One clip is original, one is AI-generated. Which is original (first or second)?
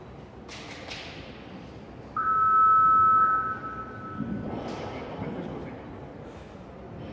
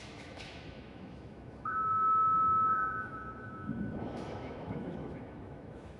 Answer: first